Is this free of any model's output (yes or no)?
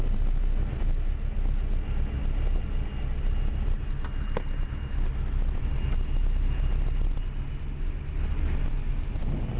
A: yes